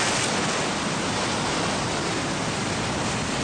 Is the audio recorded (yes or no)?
yes